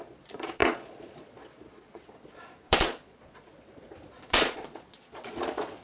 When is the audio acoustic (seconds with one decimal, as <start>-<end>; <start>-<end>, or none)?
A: none

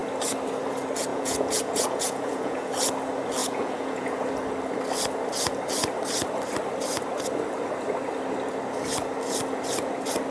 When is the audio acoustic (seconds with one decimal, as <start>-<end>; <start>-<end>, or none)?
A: 0.0-1.1; 2.7-3.4; 4.2-10.3

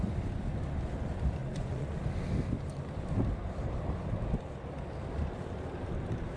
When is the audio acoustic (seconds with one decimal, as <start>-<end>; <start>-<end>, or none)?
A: 0.0-1.4; 2.0-6.4

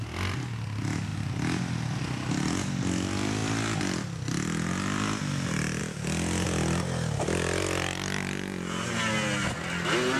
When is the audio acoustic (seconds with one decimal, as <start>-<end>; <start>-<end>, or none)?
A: 0.0-10.2

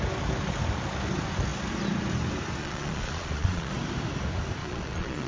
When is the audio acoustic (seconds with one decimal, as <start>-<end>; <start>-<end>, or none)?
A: 0.0-2.6; 3.7-4.6

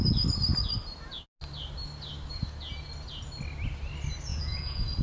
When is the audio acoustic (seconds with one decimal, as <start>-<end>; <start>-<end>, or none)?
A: 0.0-4.3

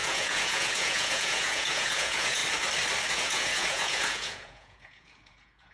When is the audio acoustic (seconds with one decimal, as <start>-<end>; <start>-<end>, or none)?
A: 2.4-3.1